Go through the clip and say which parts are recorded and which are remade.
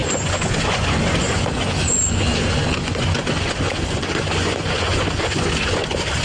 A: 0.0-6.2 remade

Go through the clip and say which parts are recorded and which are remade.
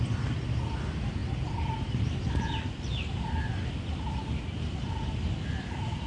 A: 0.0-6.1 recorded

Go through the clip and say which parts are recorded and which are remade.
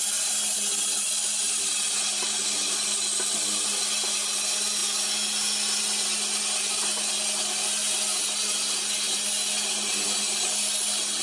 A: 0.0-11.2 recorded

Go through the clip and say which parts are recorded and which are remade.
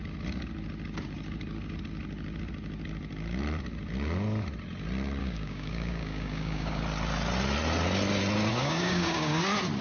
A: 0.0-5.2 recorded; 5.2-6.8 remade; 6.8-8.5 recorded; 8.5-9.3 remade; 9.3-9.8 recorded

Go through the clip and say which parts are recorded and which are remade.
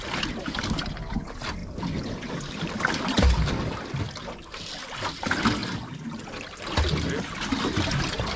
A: 0.0-8.4 recorded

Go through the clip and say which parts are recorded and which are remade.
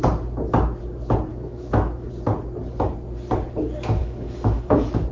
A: 0.0-1.3 recorded; 1.3-2.1 remade; 2.1-4.0 recorded; 4.0-5.1 remade